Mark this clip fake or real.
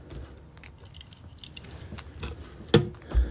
real